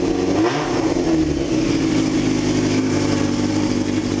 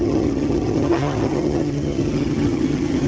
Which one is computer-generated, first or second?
second